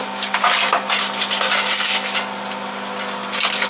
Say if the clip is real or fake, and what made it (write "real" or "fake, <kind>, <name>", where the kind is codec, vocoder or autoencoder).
real